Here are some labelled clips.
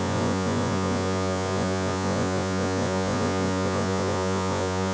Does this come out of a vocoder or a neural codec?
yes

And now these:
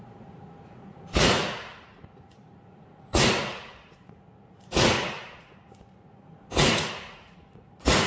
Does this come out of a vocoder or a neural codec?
yes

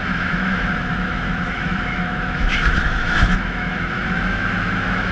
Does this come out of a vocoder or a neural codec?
yes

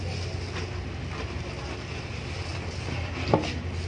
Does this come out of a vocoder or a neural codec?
no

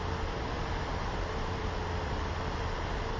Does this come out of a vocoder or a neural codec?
no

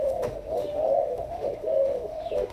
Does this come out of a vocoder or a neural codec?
yes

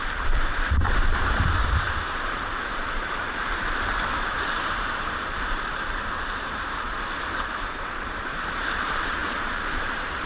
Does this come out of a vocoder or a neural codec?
yes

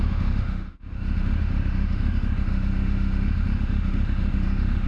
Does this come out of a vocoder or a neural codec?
yes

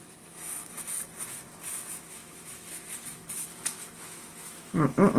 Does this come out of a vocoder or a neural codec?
yes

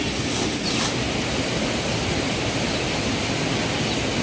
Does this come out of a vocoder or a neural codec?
no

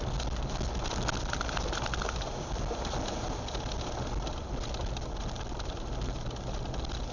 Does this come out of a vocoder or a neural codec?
no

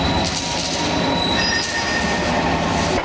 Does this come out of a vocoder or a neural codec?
no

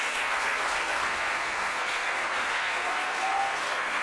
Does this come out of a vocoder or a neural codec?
yes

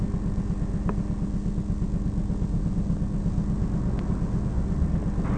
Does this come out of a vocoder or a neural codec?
no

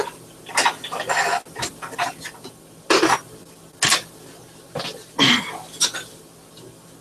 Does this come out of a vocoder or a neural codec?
no